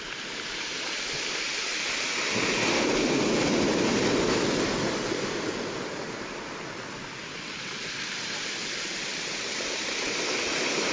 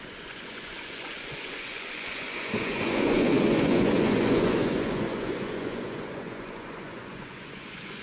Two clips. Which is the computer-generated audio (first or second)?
second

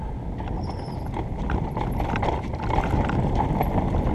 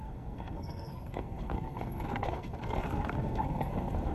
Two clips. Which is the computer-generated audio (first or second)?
second